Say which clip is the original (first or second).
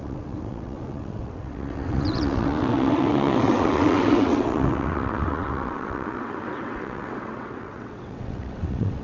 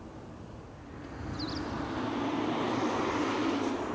second